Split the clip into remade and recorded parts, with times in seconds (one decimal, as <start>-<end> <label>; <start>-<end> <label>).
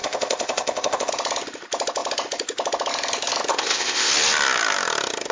0.0-1.1 remade; 1.1-3.5 recorded; 3.5-4.1 remade; 4.1-5.3 recorded